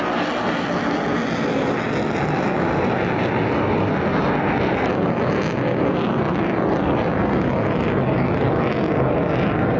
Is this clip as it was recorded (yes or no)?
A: yes